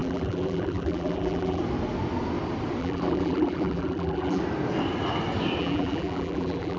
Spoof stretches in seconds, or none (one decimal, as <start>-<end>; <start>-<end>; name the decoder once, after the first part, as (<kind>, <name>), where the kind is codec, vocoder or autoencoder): 0.0-1.6 (vocoder, BigVGAN v2); 2.8-4.4; 5.6-6.8